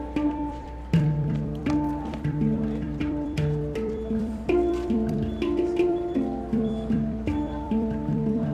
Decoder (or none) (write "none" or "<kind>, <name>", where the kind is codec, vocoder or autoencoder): vocoder, BigVGAN v2